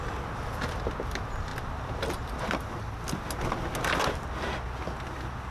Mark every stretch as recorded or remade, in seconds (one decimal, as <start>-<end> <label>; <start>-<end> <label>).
0.0-5.5 recorded